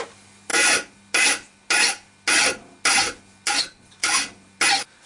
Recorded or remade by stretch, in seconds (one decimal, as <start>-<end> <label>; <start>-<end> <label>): 0.0-5.1 recorded